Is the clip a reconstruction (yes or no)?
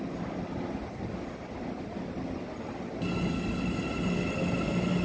no